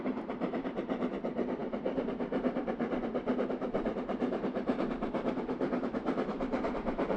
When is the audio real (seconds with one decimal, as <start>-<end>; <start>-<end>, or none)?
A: none

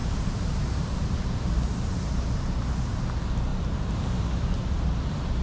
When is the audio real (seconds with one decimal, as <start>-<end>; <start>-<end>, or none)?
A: 1.5-3.5; 4.0-5.4

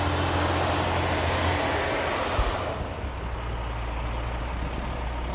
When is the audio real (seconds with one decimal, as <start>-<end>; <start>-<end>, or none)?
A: 0.0-5.3

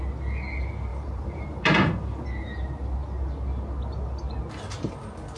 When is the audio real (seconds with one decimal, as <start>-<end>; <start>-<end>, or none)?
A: 0.0-0.9; 1.6-5.4

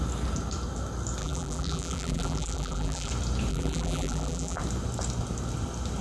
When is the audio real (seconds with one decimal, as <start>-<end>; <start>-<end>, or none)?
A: 0.0-1.2; 3.1-3.5; 4.6-6.0

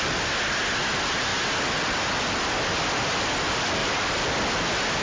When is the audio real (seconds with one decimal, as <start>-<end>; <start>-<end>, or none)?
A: 0.0-5.0

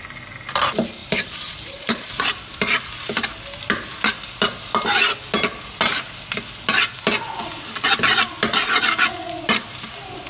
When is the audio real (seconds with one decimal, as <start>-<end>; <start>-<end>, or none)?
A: 0.0-1.0; 2.2-10.3